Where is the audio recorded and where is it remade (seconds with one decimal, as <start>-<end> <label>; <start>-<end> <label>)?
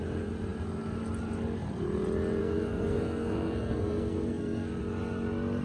0.0-2.4 recorded; 2.4-4.8 remade; 4.8-5.6 recorded